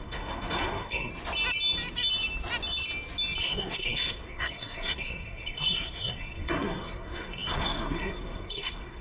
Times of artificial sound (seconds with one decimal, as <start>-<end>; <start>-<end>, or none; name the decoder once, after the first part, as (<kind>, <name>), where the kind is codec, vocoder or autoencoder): 0.0-1.1 (codec, SNAC); 3.4-9.0